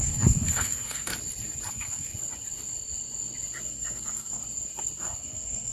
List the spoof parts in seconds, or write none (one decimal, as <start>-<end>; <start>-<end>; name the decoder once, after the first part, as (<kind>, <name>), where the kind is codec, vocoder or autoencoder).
0.0-1.1 (codec, SNAC); 1.7-2.1; 3.7-4.4; 5.0-5.7